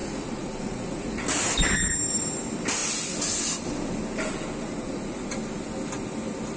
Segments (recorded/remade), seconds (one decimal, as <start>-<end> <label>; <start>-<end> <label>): 0.0-1.2 remade; 1.2-4.7 recorded; 4.7-5.3 remade; 5.3-6.6 recorded